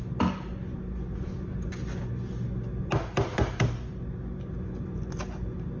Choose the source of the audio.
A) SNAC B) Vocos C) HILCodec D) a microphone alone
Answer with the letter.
D